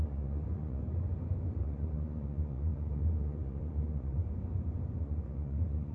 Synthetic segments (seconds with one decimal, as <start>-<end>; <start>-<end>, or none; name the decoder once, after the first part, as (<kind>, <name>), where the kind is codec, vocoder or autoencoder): 0.0-0.8 (vocoder, Vocos); 1.5-4.2; 5.0-5.9